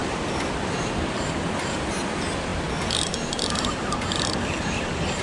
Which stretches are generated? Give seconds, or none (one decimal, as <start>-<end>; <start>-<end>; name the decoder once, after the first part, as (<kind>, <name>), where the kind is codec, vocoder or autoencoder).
none